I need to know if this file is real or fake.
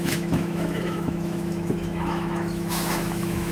fake